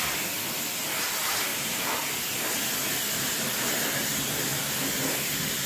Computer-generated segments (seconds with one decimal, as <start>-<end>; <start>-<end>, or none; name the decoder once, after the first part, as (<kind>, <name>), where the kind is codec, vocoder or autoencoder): 1.5-2.1 (vocoder, BigVGAN v2)